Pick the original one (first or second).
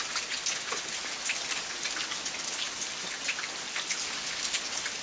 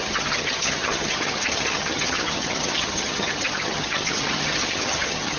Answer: first